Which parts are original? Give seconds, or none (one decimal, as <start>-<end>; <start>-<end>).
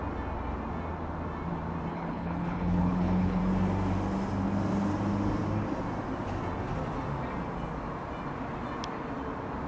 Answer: 0.0-1.9; 3.4-9.7